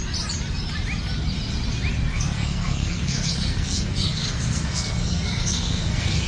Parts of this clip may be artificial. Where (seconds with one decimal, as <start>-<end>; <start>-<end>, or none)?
2.1-6.3